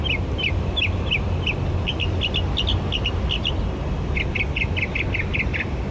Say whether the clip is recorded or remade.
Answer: recorded